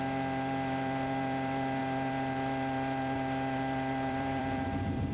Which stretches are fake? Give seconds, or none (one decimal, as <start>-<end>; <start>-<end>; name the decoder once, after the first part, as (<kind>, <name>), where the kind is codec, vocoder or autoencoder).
0.0-5.1 (vocoder, BigVGAN v2)